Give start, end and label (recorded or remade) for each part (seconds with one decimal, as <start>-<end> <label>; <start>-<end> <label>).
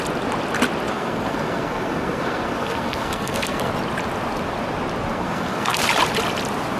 0.0-0.9 recorded; 0.9-3.7 remade; 3.7-5.1 recorded; 5.1-5.8 remade; 5.8-6.8 recorded